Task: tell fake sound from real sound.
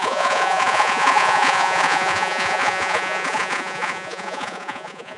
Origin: fake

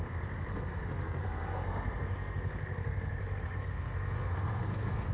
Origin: fake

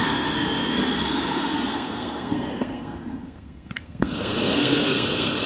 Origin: fake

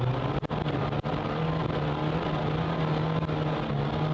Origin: real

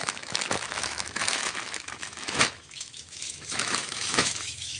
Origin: fake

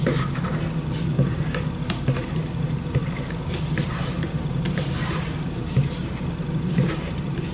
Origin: fake